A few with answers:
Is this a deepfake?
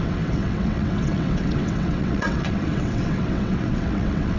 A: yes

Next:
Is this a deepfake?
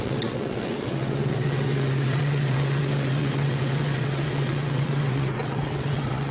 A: yes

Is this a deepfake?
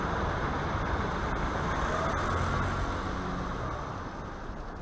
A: no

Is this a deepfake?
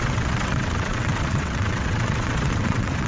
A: yes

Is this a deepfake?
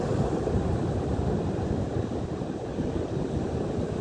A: no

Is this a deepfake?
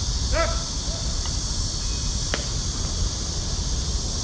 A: no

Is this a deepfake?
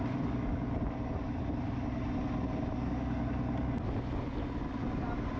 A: no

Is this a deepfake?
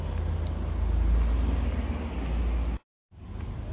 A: no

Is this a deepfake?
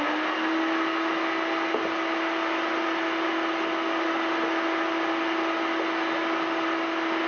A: no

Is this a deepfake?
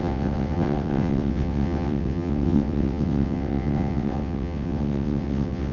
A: yes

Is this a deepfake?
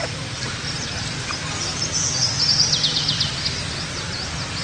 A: no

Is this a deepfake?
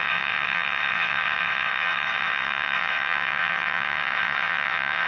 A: yes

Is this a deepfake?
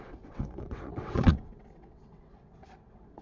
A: yes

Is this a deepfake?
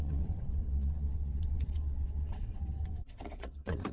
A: yes